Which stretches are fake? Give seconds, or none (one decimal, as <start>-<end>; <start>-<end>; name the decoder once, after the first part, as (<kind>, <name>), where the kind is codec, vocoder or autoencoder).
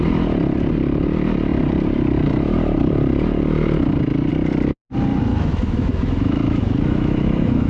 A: 5.3-7.7 (autoencoder, DAC-VAE)